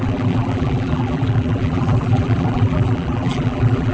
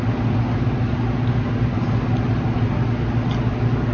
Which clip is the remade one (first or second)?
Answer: first